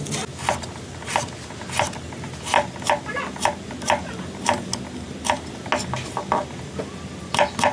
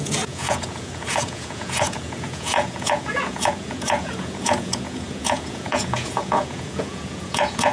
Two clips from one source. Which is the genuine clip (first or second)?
first